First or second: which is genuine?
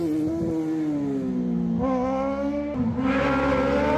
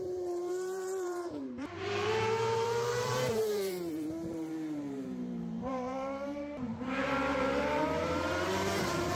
first